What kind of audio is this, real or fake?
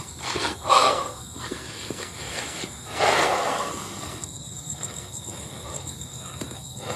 fake